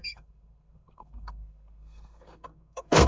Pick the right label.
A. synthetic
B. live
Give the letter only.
A